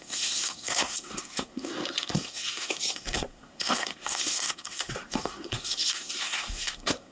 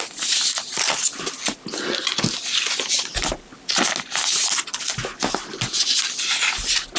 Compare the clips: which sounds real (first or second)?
second